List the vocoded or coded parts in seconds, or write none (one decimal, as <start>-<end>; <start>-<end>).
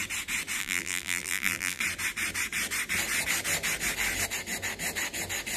0.6-1.8